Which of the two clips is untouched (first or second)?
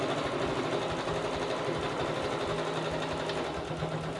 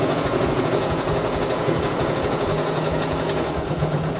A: first